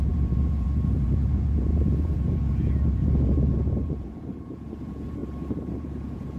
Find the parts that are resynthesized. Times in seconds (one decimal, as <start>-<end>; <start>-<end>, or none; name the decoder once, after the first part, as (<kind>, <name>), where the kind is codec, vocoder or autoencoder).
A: 0.0-5.2 (vocoder, Vocos); 5.8-6.4

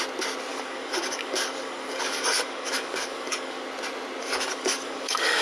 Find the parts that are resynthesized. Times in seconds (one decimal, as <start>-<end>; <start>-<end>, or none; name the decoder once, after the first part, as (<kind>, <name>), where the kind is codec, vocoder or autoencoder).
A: 0.5-3.6 (codec, DAC); 4.2-5.4

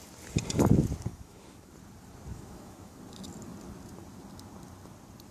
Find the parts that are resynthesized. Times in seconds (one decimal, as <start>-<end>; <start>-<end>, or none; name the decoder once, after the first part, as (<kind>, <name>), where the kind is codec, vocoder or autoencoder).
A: 1.1-1.7 (autoencoder, DAC-VAE); 2.3-3.0

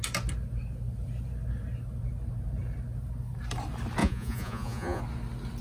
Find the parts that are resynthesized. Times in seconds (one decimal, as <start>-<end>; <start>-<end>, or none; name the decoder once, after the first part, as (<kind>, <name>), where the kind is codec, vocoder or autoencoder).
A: 4.0-5.0 (vocoder, Vocos)

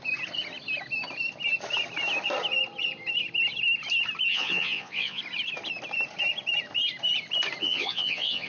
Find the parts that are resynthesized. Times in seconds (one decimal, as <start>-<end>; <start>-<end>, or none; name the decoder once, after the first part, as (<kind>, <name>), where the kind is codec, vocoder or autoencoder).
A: 4.3-5.2 (vocoder, Vocos); 7.6-8.5

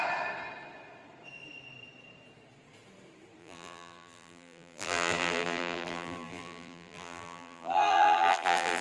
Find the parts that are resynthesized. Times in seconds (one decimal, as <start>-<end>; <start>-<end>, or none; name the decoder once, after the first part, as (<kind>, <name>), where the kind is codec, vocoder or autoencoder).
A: 3.4-8.8 (vocoder, BigVGAN v2)

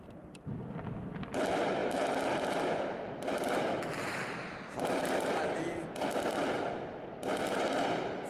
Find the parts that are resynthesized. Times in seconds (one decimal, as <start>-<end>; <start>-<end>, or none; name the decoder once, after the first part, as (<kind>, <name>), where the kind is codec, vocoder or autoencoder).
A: none

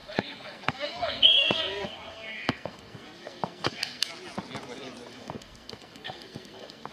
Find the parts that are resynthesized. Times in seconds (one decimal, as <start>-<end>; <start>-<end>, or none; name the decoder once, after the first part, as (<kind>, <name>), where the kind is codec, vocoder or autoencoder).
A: 0.0-4.1 (codec, SNAC); 5.1-6.9